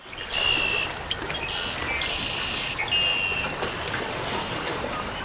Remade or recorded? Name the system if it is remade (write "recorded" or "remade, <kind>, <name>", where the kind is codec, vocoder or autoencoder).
recorded